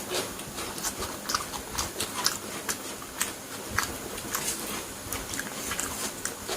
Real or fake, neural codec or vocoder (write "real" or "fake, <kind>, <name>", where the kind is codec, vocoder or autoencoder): real